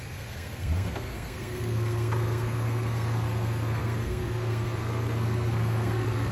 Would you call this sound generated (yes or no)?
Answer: yes